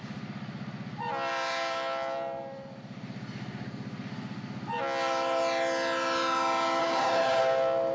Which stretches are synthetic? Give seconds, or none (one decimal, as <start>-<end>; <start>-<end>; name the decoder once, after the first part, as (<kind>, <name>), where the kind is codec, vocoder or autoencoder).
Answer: 6.8-7.4 (codec, HILCodec)